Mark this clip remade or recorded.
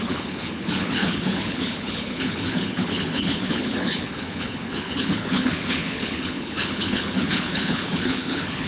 remade